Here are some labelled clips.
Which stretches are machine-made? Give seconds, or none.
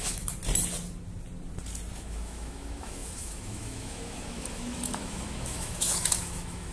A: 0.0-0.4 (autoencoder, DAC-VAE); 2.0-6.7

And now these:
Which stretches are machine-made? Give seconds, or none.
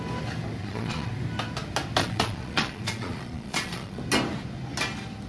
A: 0.6-1.1 (vocoder, Vocos); 2.0-4.0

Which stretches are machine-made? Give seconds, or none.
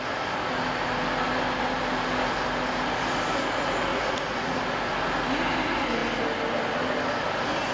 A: 3.9-4.6 (vocoder, Vocos)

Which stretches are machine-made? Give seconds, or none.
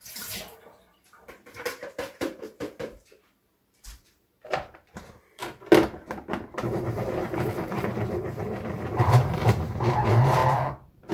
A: 0.0-5.4 (vocoder, BigVGAN v2); 6.5-10.4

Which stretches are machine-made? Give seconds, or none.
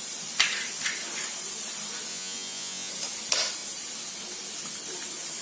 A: 2.1-2.9 (vocoder, Vocos)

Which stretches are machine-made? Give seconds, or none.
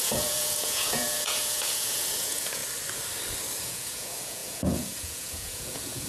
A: 0.0-2.6 (vocoder, Vocos); 3.6-6.1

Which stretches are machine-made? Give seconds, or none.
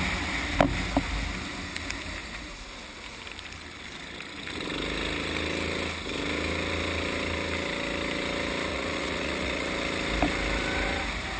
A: 2.2-2.7 (vocoder, Vocos); 8.7-9.7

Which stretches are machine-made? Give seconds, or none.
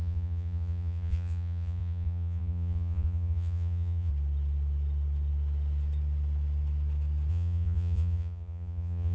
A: 0.0-4.1 (vocoder, Vocos); 7.3-9.1